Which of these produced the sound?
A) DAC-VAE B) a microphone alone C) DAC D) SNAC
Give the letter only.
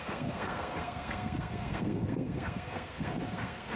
D